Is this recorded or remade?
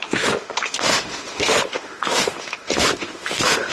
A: remade